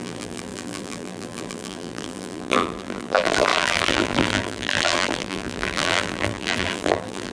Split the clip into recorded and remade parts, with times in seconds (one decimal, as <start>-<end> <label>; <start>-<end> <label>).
0.0-7.3 remade